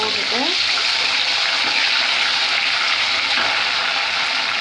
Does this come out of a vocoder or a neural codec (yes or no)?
no